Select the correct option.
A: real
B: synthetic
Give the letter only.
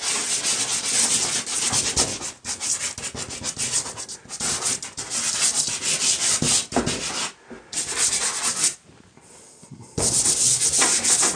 A